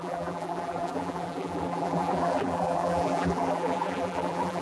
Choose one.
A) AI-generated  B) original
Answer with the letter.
A